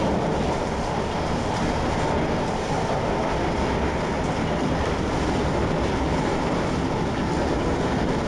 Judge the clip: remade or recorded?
recorded